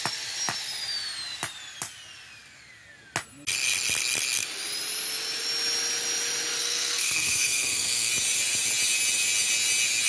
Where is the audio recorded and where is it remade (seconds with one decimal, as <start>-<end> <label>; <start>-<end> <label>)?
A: 0.0-6.6 recorded; 6.6-8.1 remade; 8.1-10.1 recorded